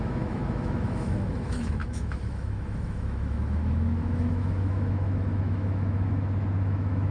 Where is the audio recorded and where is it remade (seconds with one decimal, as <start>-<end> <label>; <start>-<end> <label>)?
0.0-7.1 remade